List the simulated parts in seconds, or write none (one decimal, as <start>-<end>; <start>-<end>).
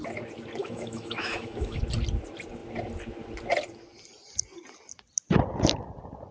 0.6-1.8